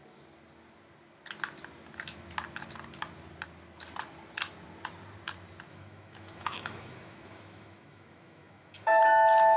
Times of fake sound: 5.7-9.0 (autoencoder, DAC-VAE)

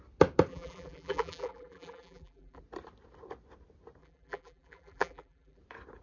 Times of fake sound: 0.5-2.6 (vocoder, BigVGAN v2); 4.0-5.6